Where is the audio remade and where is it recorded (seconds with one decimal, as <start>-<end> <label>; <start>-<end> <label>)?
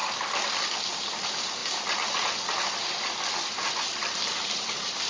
0.0-5.1 recorded